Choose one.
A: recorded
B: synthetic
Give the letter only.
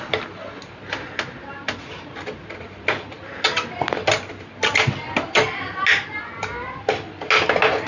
A